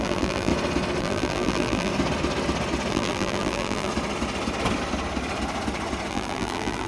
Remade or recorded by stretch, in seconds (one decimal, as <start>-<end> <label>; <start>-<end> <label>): 0.0-0.5 remade; 0.5-1.0 recorded; 1.0-1.9 remade; 1.9-2.9 recorded; 2.9-3.9 remade; 3.9-6.1 recorded; 6.1-6.9 remade